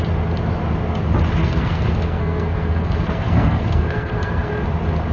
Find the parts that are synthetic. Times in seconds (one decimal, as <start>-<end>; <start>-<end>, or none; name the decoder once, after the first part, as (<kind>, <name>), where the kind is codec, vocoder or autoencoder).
1.4-4.5 (codec, SNAC)